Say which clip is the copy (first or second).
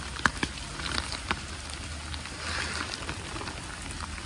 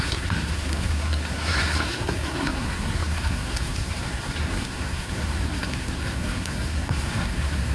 second